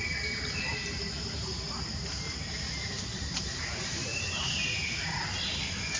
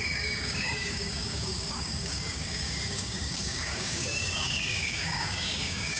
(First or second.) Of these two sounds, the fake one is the second